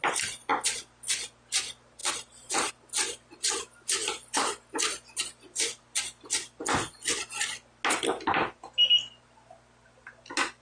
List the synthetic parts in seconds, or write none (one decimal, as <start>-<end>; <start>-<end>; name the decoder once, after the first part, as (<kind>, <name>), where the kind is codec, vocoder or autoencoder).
0.5-1.1 (vocoder, BigVGAN v2); 2.0-2.7; 4.0-5.8